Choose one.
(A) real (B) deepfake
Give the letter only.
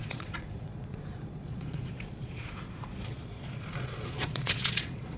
B